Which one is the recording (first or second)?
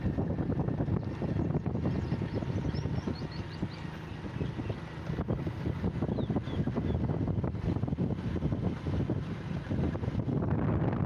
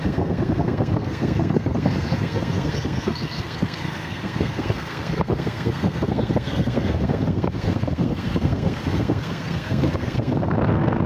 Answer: first